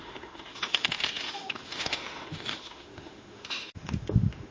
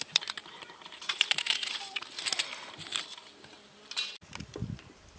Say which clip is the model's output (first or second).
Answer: first